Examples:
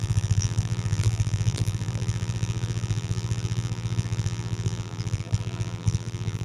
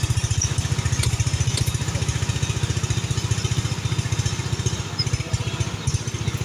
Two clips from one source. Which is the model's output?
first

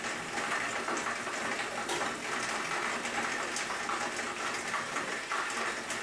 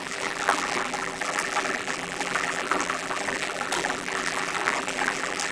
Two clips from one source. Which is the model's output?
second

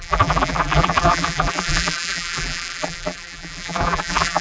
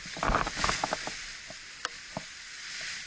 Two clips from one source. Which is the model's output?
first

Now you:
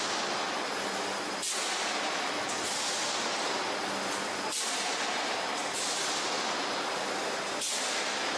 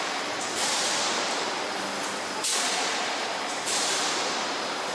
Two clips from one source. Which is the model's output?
second